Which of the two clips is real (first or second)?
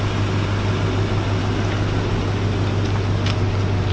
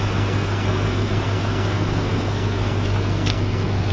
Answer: first